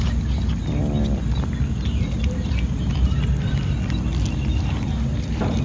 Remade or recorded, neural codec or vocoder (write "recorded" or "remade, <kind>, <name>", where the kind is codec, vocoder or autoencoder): recorded